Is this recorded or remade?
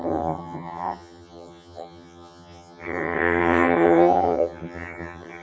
remade